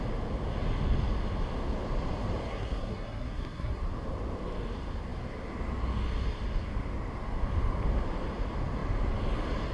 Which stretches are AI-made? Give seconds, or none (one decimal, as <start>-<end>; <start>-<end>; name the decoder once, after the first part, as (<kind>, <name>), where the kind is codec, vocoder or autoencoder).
2.5-3.8 (codec, SNAC)